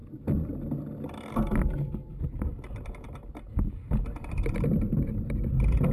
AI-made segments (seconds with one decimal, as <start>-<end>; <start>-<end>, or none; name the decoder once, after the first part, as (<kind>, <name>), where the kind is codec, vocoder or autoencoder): 0.0-0.8 (vocoder, BigVGAN v2); 2.0-5.5